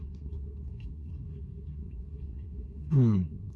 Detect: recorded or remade remade